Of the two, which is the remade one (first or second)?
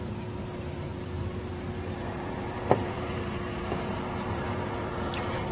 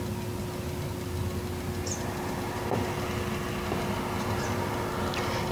first